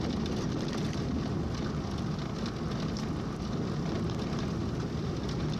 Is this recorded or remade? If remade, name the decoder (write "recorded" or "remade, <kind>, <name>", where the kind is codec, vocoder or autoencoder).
recorded